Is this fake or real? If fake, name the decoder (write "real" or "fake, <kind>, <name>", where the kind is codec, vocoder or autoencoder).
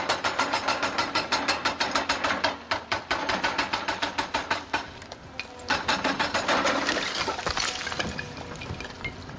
real